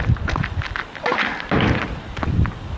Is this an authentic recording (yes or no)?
yes